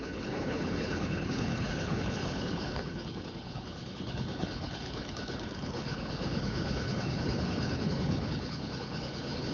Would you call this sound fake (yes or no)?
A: yes